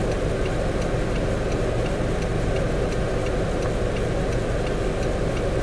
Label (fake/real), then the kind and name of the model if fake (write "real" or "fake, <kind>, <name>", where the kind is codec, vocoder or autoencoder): real